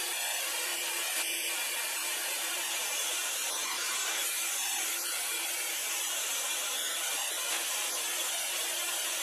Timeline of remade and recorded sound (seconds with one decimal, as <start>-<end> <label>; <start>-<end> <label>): 0.0-7.1 remade; 7.1-7.7 recorded; 7.7-9.2 remade